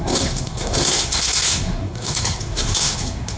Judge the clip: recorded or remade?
remade